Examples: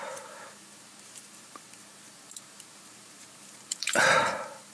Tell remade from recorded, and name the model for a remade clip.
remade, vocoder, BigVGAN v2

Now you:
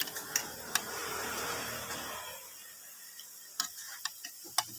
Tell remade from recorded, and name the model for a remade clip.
recorded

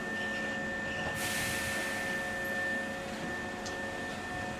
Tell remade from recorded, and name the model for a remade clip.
recorded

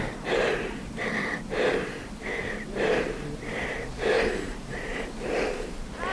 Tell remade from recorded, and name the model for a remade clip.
remade, vocoder, BigVGAN v2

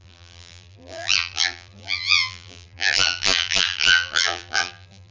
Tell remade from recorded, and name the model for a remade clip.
remade, vocoder, BigVGAN v2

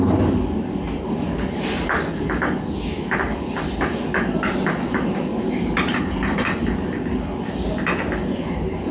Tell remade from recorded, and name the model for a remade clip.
recorded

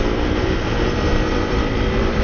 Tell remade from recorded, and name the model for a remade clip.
remade, vocoder, BigVGAN v2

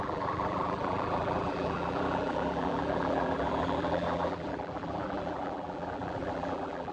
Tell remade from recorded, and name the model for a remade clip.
remade, vocoder, BigVGAN v2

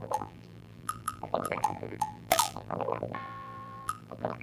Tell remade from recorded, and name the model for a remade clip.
remade, vocoder, BigVGAN v2